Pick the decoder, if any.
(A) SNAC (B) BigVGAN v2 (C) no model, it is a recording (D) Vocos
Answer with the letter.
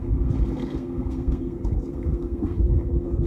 A